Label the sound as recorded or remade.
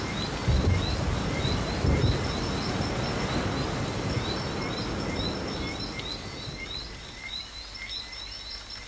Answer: recorded